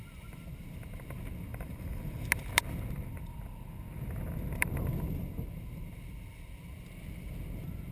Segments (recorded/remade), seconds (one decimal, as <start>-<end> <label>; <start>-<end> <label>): 0.0-1.5 recorded; 1.5-2.0 remade; 2.0-7.9 recorded